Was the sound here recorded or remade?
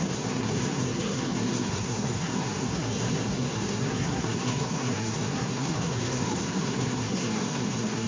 remade